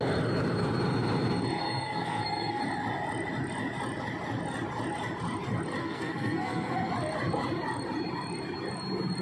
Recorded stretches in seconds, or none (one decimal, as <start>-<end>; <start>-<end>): 0.0-1.6; 2.6-5.8; 6.9-9.2